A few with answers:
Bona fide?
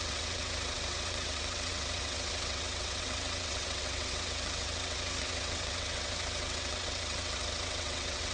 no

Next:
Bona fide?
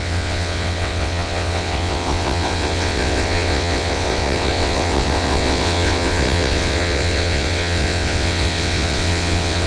no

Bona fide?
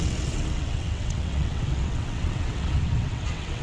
no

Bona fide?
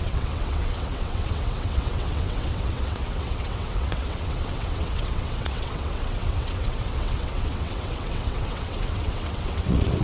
no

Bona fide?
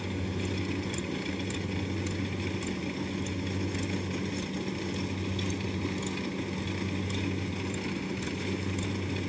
yes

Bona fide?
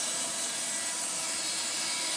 yes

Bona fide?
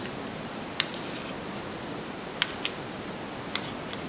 yes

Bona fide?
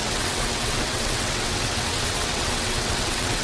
no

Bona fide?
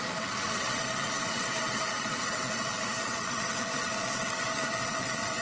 no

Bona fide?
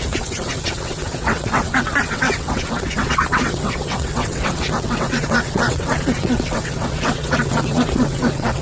no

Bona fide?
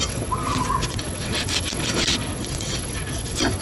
no